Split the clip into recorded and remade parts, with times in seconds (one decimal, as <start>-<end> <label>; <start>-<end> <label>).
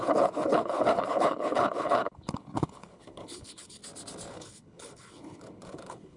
0.0-3.8 remade; 3.8-4.3 recorded; 4.3-6.2 remade